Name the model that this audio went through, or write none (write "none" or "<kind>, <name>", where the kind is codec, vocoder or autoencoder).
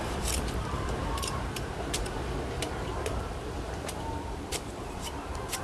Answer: vocoder, BigVGAN v2